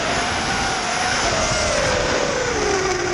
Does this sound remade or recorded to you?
recorded